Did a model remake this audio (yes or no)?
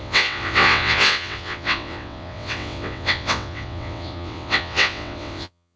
yes